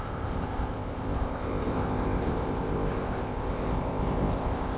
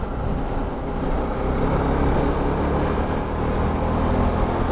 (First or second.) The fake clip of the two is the first